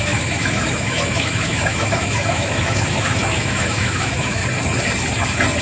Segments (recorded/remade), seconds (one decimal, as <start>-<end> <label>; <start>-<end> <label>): 0.0-4.4 remade; 4.4-5.6 recorded